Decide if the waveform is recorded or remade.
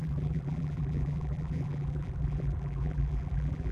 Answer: remade